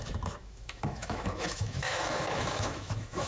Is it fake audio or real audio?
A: fake